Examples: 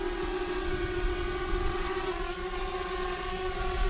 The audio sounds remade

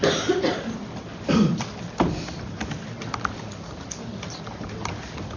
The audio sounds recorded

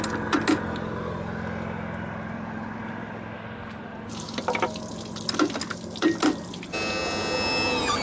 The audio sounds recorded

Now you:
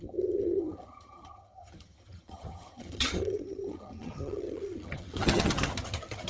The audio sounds remade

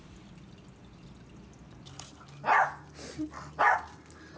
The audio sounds recorded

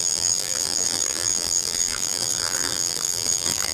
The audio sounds remade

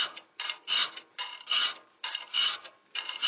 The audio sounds recorded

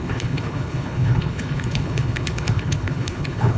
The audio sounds remade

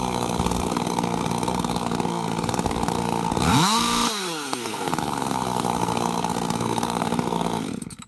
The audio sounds remade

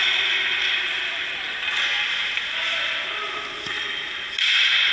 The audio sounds recorded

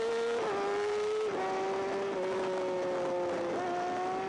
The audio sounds recorded